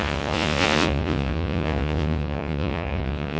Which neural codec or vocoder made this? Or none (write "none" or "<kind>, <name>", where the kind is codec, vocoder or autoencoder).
vocoder, Vocos